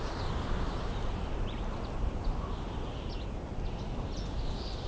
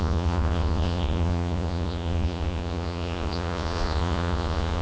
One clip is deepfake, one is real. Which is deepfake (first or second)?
second